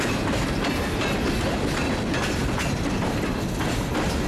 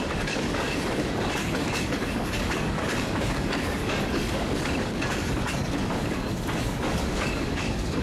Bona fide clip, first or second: first